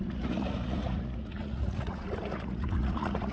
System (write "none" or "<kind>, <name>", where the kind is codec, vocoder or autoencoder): vocoder, Vocos